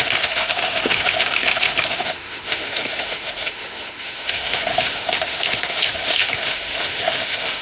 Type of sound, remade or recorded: remade